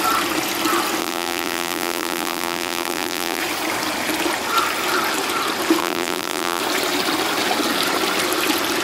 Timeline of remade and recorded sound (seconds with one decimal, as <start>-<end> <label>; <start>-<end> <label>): 0.0-1.0 recorded; 1.0-3.4 remade; 3.4-5.8 recorded; 5.8-6.6 remade; 6.6-8.8 recorded